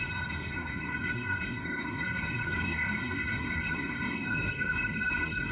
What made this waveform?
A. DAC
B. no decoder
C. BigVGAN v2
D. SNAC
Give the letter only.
D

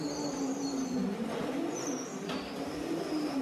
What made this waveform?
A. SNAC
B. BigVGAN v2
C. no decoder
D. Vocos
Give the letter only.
C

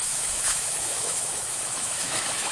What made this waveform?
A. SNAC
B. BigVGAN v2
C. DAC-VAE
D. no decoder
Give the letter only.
C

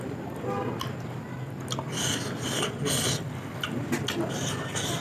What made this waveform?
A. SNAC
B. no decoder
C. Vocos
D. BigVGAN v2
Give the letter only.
B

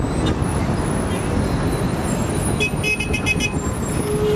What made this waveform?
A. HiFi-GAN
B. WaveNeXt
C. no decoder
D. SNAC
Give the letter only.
C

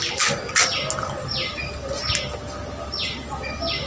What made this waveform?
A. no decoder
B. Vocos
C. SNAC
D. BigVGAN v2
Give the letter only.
A